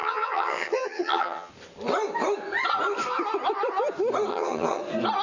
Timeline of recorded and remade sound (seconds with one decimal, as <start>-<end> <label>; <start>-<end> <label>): 0.0-1.5 remade; 1.5-4.3 recorded; 4.3-4.8 remade; 4.8-5.2 recorded